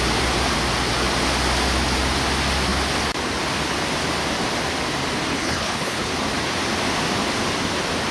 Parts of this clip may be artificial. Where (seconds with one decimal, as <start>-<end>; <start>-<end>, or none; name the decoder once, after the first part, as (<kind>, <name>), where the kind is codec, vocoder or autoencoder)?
5.3-6.1 (codec, HILCodec)